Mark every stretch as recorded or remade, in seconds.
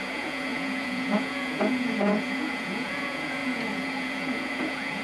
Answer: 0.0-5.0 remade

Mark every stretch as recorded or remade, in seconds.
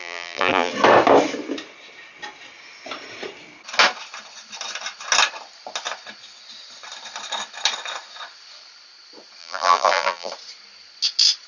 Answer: 0.0-0.7 remade; 0.7-9.4 recorded; 9.4-10.3 remade; 10.3-11.5 recorded